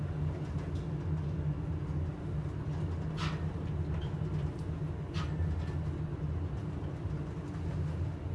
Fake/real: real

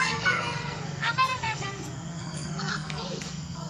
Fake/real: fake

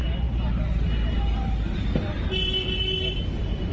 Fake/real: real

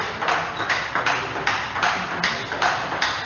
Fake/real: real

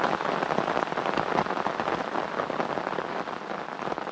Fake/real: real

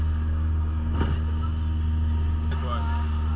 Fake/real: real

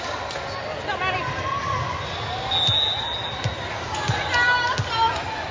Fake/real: real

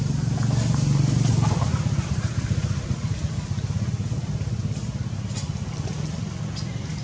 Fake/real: real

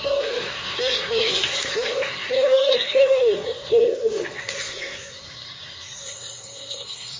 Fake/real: fake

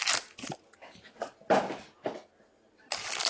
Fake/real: real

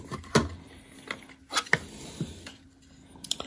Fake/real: real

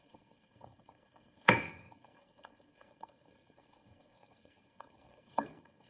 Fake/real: fake